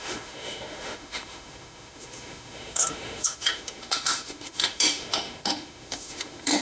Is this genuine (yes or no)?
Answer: no